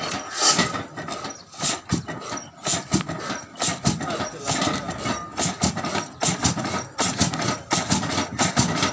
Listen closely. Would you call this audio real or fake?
real